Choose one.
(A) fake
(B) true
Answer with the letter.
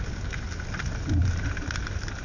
B